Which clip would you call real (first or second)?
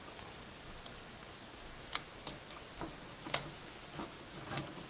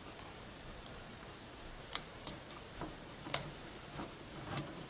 first